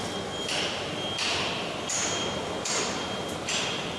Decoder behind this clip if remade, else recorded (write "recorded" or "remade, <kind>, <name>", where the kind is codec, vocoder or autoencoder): recorded